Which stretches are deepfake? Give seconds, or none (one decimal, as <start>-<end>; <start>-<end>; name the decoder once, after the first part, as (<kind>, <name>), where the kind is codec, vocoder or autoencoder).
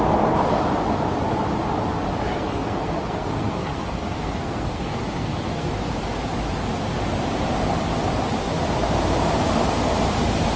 2.1-5.7 (codec, SNAC)